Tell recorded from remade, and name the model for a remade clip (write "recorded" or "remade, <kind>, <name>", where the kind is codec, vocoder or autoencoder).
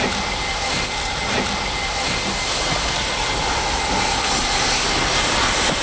recorded